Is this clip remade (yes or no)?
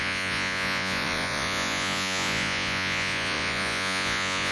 yes